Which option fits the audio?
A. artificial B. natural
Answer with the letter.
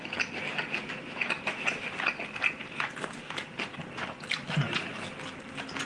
B